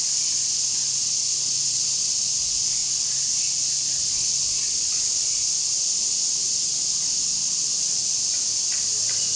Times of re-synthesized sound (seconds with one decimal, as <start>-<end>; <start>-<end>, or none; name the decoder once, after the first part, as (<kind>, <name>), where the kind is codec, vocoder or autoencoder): none